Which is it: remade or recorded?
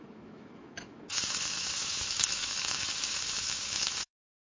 remade